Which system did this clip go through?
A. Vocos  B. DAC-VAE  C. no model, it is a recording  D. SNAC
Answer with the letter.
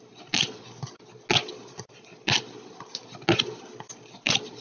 C